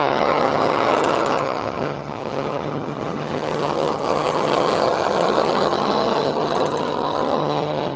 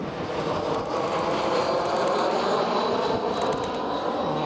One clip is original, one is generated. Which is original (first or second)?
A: second